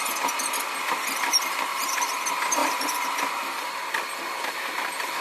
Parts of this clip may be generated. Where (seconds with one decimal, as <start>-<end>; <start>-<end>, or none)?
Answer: 1.7-2.2; 2.6-3.7